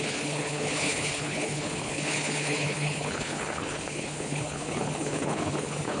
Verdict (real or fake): fake